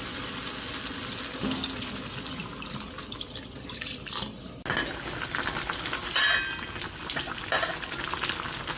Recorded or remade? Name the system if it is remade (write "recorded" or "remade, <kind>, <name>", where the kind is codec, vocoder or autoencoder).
recorded